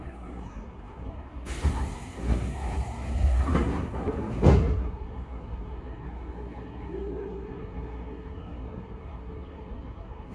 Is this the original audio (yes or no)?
no